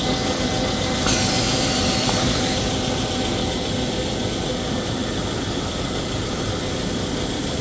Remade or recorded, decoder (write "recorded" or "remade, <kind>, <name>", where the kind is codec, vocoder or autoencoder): recorded